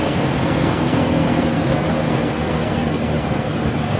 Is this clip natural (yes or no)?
no